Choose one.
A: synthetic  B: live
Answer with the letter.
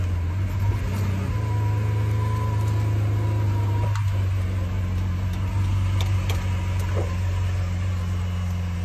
B